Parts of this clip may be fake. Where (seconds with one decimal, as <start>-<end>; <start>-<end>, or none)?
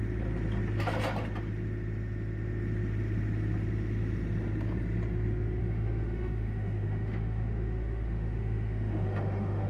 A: 5.6-9.7